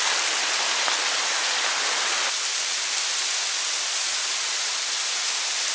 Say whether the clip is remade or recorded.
recorded